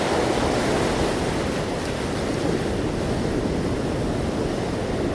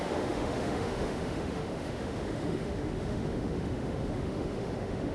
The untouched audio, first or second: first